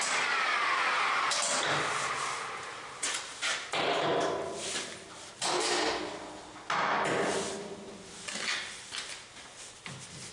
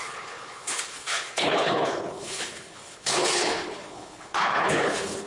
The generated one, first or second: second